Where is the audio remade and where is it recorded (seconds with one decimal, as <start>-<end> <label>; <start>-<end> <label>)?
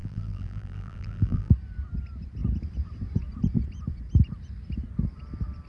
0.0-1.5 remade; 1.5-5.7 recorded